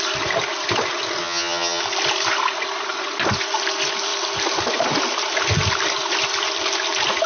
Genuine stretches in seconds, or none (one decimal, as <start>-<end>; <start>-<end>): 0.0-1.2; 1.8-7.3